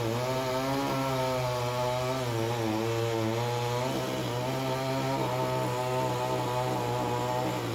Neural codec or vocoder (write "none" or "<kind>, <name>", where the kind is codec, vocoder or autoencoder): none